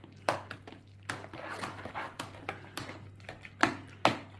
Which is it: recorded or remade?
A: recorded